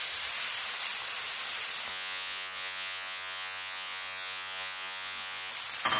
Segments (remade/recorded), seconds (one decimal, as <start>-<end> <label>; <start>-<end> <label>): 0.0-1.9 recorded; 1.9-5.5 remade; 5.5-6.0 recorded